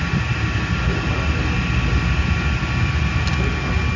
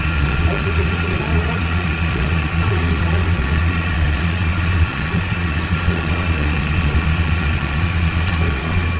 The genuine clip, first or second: first